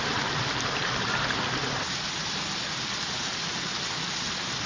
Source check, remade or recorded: recorded